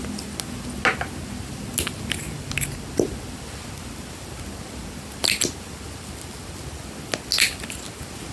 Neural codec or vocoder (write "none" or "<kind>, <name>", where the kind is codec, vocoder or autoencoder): none